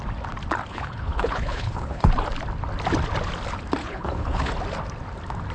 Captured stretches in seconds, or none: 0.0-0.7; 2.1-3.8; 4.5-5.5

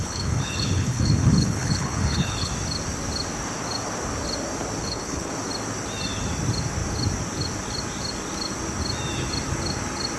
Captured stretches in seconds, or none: 2.5-4.8; 5.3-10.2